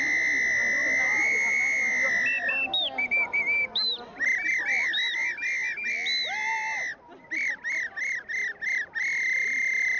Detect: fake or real real